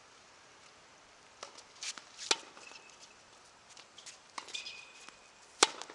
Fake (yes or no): no